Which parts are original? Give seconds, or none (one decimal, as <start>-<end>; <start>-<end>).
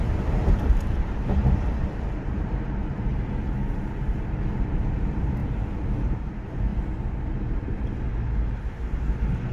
3.1-4.1; 6.7-8.6